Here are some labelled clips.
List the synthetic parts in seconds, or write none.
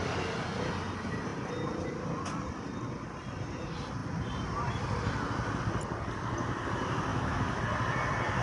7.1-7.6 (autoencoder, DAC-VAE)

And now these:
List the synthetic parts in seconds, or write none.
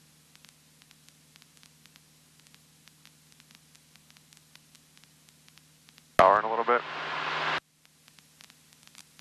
none